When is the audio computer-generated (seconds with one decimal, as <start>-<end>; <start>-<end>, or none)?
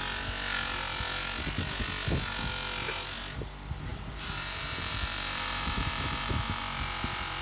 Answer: 3.9-6.6